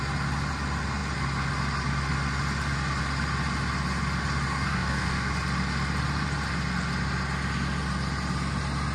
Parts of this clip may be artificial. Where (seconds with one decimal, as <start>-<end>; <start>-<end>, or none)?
4.5-5.3